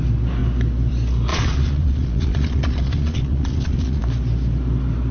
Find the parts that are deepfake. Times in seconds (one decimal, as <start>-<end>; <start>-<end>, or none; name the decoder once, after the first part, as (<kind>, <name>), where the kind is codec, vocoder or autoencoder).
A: 1.3-4.0 (vocoder, Vocos)